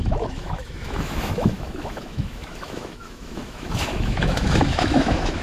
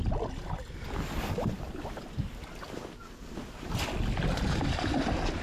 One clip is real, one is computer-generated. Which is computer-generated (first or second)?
first